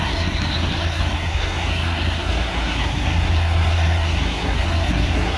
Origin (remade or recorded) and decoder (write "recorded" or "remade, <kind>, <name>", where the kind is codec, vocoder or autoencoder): remade, codec, SNAC